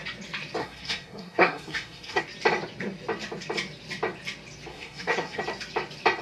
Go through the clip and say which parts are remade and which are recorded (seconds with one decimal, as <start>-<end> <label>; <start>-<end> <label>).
0.0-0.6 recorded; 0.6-2.2 remade; 2.2-4.7 recorded; 4.7-5.4 remade; 5.4-6.2 recorded